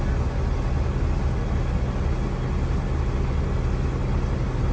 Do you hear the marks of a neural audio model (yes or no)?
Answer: no